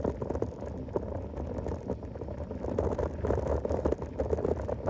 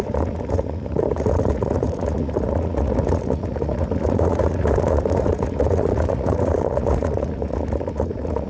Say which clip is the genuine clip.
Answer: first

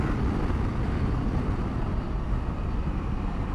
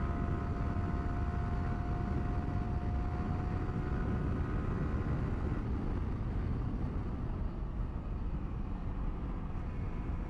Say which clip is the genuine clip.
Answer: second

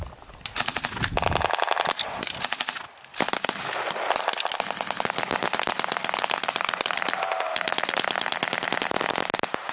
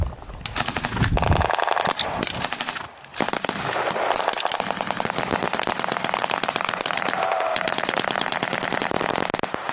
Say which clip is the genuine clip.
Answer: first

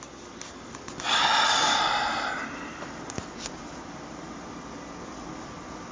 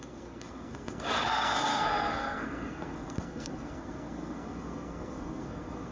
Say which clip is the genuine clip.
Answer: first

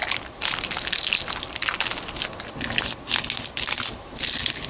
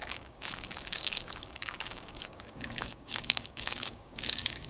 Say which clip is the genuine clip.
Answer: first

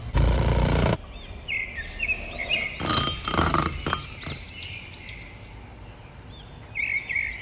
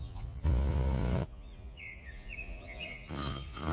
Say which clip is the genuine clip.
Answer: first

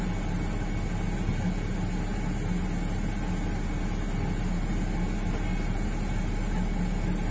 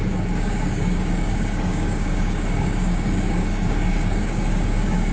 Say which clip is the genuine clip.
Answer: first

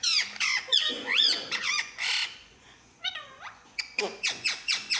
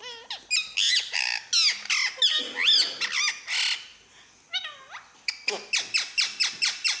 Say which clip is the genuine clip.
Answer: second